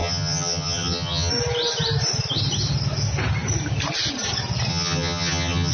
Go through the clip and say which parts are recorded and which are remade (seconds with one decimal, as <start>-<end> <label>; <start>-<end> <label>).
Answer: 0.0-1.3 remade; 1.3-4.7 recorded; 4.7-5.7 remade